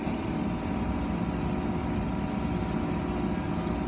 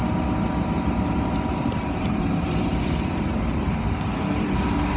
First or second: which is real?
first